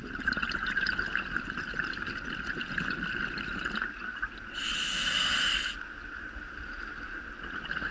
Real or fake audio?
real